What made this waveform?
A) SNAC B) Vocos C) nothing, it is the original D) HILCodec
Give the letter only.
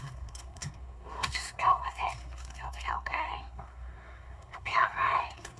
A